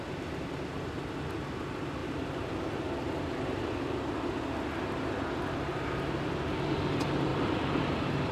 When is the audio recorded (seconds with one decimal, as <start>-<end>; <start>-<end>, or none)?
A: 0.0-8.3